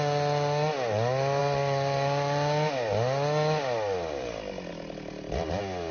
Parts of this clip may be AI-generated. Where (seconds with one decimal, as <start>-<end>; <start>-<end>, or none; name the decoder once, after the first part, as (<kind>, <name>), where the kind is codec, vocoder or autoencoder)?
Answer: none